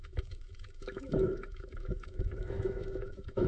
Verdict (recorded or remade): remade